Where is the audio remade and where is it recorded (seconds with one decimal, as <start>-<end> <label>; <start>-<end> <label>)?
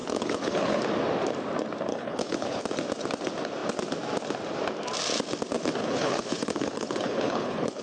0.0-0.8 remade; 0.8-1.9 recorded; 1.9-2.6 remade; 2.6-5.8 recorded; 5.8-7.8 remade